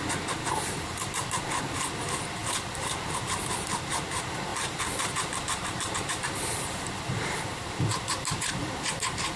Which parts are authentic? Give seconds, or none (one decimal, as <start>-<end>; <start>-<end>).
0.0-4.5; 6.7-9.4